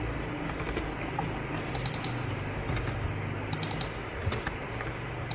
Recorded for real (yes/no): yes